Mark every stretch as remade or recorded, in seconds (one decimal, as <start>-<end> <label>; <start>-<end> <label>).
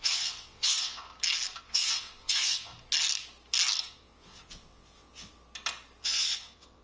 0.0-1.1 remade; 1.1-1.6 recorded; 1.6-2.7 remade; 2.7-3.9 recorded; 3.9-5.3 remade; 5.3-6.0 recorded; 6.0-6.8 remade